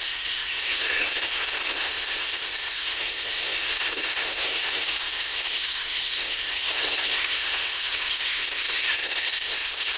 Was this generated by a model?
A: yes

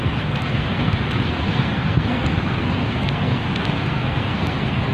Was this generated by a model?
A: yes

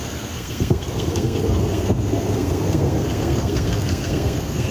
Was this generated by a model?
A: yes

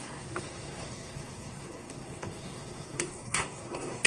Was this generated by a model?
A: yes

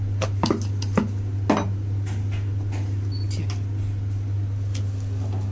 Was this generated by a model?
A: no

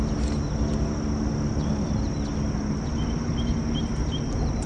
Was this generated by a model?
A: no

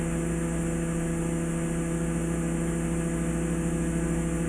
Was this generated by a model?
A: no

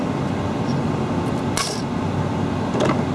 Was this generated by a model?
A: no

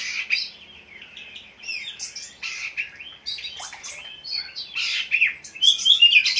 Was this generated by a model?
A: no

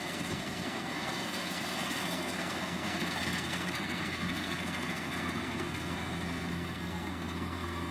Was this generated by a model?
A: yes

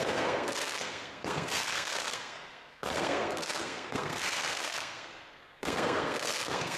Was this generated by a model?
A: yes